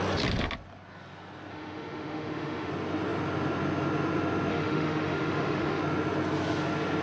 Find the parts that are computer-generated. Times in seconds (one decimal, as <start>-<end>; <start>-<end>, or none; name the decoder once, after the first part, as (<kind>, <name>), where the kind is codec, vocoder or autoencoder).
1.5-2.7 (autoencoder, DAC-VAE); 4.5-5.8